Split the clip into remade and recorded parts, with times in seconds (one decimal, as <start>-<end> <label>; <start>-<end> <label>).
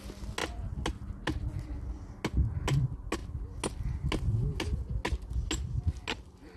0.0-6.6 recorded